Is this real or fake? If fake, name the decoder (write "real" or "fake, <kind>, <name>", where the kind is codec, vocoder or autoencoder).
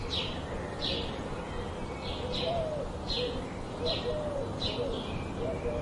real